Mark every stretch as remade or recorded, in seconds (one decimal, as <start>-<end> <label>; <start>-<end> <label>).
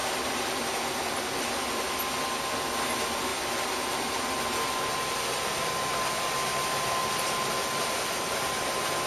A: 0.0-0.6 remade; 0.6-3.3 recorded; 3.3-4.3 remade; 4.3-7.0 recorded; 7.0-7.5 remade; 7.5-9.1 recorded